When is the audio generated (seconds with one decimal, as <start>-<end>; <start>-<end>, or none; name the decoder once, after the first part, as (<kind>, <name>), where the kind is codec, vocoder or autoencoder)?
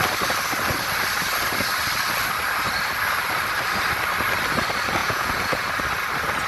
5.0-5.7 (vocoder, Vocos)